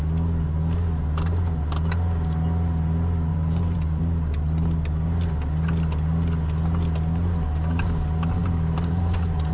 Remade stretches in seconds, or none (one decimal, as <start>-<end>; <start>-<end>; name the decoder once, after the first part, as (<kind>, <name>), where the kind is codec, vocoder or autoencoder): 3.3-4.0 (vocoder, BigVGAN v2); 8.4-9.5